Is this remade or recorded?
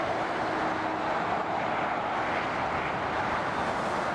recorded